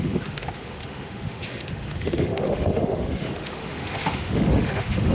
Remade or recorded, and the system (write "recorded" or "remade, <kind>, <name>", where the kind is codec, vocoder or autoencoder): remade, autoencoder, DAC-VAE